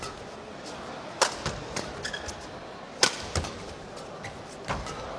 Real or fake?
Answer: real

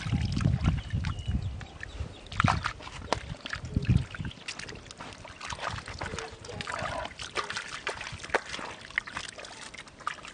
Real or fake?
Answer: real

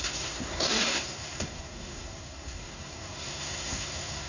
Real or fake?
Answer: fake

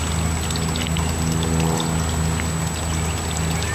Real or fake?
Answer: real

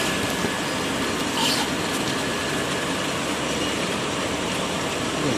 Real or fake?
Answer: real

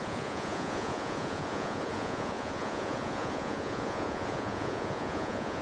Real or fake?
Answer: fake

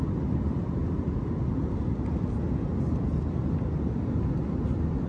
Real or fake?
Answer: real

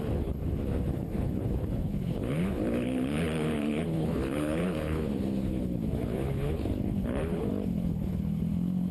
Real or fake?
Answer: fake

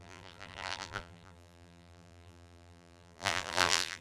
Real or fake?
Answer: fake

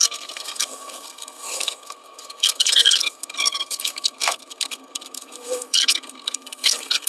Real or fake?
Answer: fake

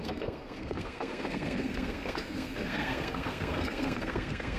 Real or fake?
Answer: fake